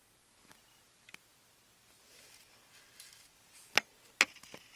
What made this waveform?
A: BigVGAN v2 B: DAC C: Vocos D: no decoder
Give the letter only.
D